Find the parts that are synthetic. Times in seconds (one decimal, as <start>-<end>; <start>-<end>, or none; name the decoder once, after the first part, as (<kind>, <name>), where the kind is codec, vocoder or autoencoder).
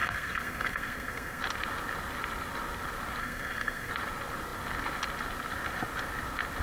0.0-1.4 (codec, SNAC); 3.2-3.9